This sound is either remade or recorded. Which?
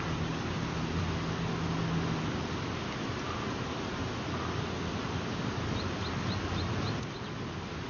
recorded